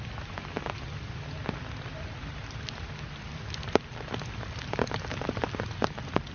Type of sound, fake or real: real